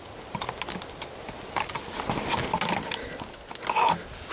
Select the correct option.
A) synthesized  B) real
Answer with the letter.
B